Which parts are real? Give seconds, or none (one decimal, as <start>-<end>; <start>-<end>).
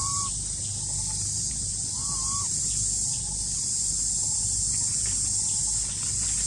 0.0-6.5